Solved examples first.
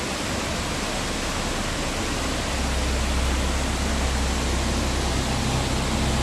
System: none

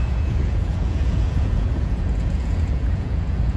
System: vocoder, Vocos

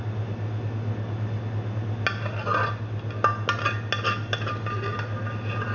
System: none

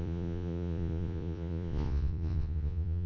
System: vocoder, Vocos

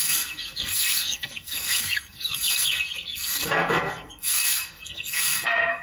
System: codec, SNAC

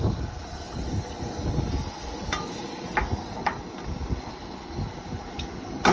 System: none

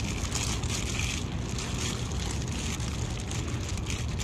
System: none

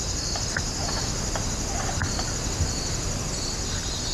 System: none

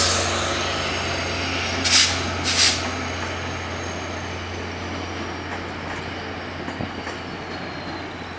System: none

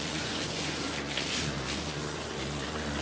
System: vocoder, Vocos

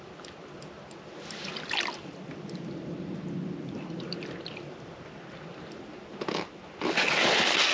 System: none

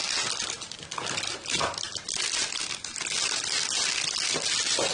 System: none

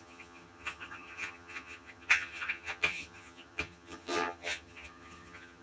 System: vocoder, HiFi-GAN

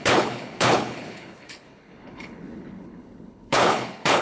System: codec, HILCodec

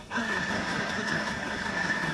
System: codec, SNAC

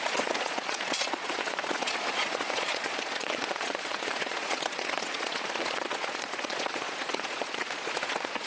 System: vocoder, Vocos